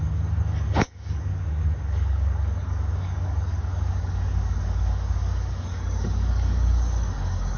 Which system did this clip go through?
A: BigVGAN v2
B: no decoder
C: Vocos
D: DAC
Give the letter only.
D